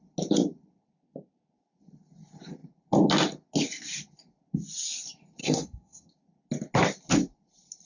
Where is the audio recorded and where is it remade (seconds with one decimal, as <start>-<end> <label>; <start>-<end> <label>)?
0.0-5.4 recorded; 5.4-6.1 remade; 6.1-7.8 recorded